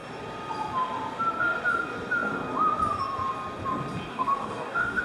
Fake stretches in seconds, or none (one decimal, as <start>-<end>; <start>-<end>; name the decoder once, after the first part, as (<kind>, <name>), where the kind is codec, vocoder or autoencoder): 4.1-5.0 (codec, DAC)